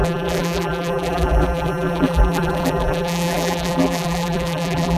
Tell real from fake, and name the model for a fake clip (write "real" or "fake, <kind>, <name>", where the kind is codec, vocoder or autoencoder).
fake, vocoder, BigVGAN v2